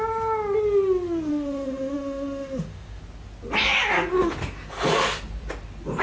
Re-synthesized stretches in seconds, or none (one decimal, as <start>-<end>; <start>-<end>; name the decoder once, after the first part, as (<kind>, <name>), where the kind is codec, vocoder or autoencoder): 1.3-3.0 (autoencoder, DAC-VAE)

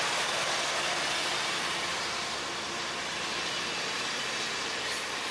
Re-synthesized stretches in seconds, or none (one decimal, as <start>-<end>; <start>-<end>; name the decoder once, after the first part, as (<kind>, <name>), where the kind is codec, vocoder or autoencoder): none

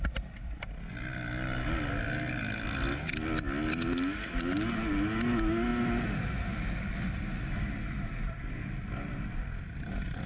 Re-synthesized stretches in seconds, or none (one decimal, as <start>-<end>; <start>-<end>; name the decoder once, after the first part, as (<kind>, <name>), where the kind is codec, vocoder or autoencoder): none

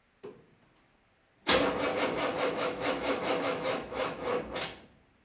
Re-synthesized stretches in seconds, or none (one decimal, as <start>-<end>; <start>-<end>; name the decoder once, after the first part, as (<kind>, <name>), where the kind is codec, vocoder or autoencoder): 2.3-4.3 (autoencoder, DAC-VAE)

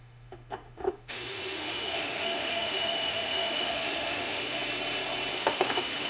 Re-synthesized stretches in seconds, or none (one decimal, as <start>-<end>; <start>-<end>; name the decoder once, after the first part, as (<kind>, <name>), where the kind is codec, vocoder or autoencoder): 0.0-4.6 (autoencoder, DAC-VAE); 5.3-6.1

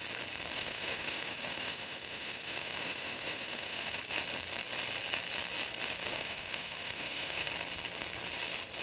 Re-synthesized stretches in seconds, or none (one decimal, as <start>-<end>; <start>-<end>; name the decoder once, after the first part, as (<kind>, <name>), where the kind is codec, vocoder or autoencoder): 0.5-4.0 (autoencoder, DAC-VAE); 6.1-7.5